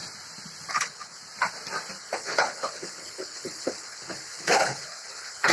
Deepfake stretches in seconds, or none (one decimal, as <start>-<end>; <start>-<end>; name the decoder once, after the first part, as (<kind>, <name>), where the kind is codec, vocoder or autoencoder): 0.7-1.2 (codec, HILCodec); 2.0-5.5